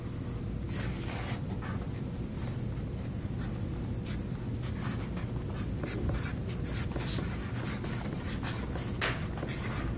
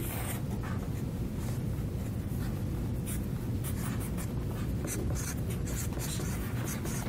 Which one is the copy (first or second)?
second